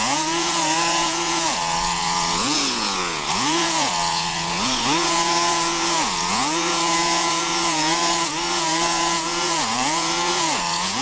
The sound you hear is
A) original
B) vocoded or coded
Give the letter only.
B